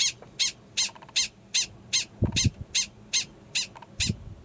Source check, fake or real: real